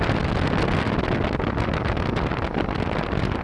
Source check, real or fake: real